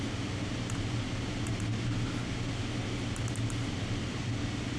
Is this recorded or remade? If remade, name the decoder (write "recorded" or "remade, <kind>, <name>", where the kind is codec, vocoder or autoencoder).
recorded